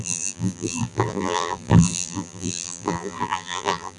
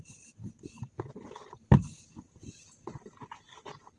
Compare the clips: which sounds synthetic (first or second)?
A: first